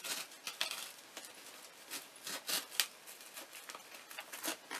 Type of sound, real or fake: real